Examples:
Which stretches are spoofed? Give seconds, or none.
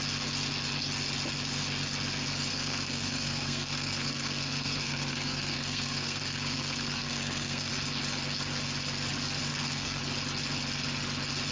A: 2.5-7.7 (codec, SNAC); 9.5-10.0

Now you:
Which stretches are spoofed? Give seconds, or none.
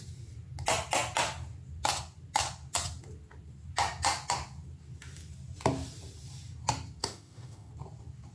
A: 7.0-7.7 (autoencoder, DAC-VAE)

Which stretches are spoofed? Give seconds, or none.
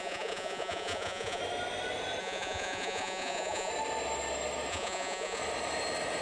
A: 0.0-1.4 (vocoder, Vocos); 2.2-3.7; 4.7-5.4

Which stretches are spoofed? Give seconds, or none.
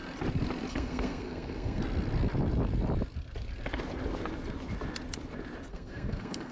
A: 0.7-1.8 (codec, SNAC); 5.7-6.5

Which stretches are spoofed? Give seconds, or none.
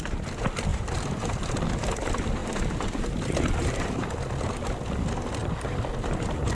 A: 0.7-1.7 (vocoder, BigVGAN v2); 2.4-3.0; 3.6-4.1